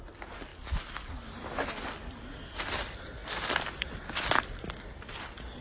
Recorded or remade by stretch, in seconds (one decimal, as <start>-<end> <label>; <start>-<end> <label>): 0.0-5.6 recorded